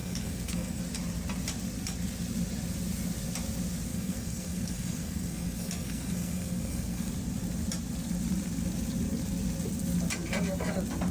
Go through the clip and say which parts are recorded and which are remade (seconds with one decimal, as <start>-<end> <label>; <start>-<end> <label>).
0.0-0.8 remade; 0.8-3.9 recorded; 3.9-7.1 remade; 7.1-11.1 recorded